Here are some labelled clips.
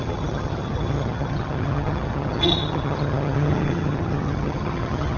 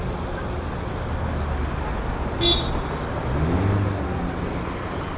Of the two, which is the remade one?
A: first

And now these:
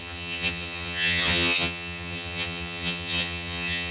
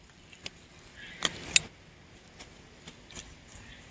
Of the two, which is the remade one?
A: first